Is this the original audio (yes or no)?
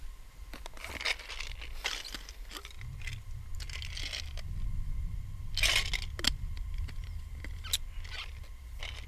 yes